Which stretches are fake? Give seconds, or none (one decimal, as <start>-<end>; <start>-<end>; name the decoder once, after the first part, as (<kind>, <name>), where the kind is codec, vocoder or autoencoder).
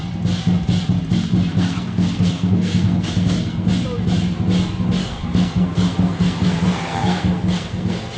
1.5-3.7 (codec, SNAC); 5.0-8.2